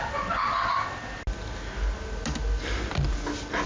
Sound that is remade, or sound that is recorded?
recorded